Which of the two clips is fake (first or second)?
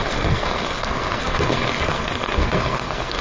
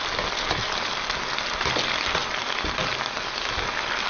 first